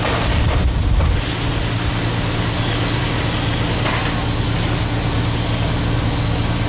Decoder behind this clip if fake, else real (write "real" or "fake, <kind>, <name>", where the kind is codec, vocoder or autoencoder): real